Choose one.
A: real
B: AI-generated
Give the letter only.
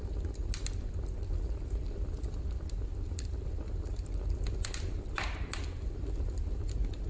A